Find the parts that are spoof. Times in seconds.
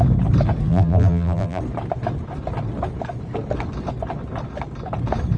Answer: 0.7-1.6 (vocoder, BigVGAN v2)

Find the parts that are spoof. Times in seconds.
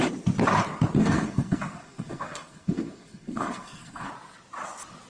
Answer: 1.0-4.1 (codec, SNAC)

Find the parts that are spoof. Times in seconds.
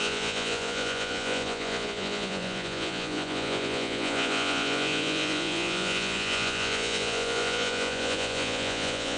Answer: 0.0-9.2 (vocoder, Vocos)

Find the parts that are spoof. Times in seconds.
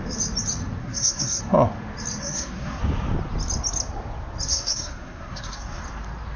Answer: 0.8-1.4 (codec, SNAC); 2.2-2.8; 4.5-5.8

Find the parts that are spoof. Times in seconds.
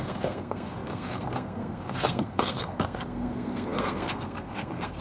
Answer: 0.0-5.0 (codec, SNAC)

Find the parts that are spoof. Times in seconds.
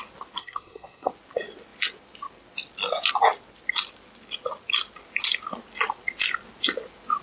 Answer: 0.4-1.1 (codec, SNAC)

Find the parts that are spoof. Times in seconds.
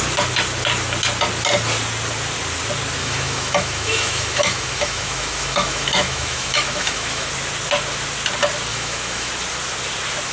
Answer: 3.0-7.3 (autoencoder, DAC-VAE); 8.7-9.3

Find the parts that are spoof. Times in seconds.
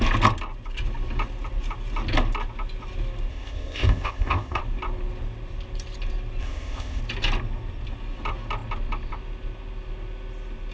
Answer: 3.3-4.6 (codec, ZipCodec); 6.4-7.0